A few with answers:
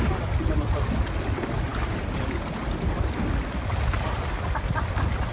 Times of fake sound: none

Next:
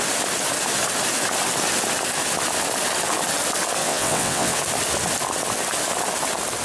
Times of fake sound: 3.8-4.6 (vocoder, WaveNeXt)

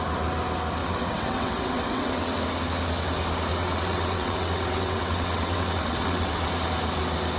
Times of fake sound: 0.8-2.4 (vocoder, WaveNeXt); 3.5-6.5

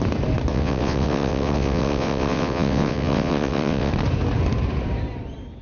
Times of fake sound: 0.5-3.9 (vocoder, WaveNeXt)

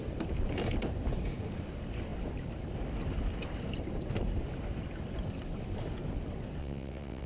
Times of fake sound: 6.6-7.3 (vocoder, WaveNeXt)

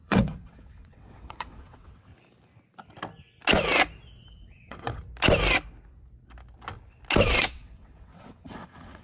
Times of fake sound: 0.0-2.1 (vocoder, WaveNeXt); 4.3-5.0; 7.2-9.0

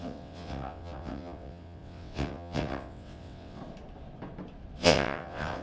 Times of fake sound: 0.0-3.6 (vocoder, WaveNeXt); 4.8-5.6

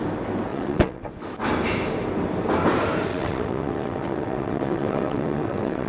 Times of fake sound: 0.5-1.1 (vocoder, WaveNeXt); 3.1-5.9